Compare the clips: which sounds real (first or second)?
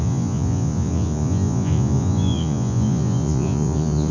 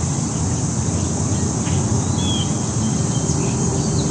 second